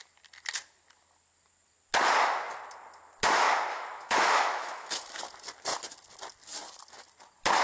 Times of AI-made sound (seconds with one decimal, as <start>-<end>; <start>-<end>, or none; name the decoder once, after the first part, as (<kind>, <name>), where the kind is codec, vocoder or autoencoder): 3.7-5.2 (autoencoder, DAC-VAE)